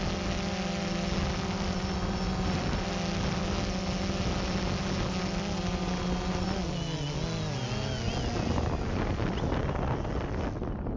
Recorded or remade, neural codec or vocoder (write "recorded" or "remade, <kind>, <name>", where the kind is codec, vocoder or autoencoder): recorded